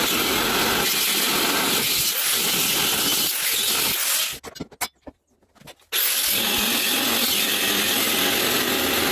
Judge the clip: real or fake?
real